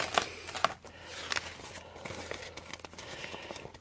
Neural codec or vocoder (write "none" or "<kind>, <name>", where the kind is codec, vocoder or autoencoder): none